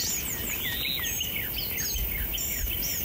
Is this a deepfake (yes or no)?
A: no